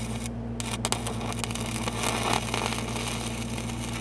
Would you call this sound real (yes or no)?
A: yes